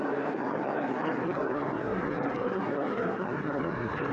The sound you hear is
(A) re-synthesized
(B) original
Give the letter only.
A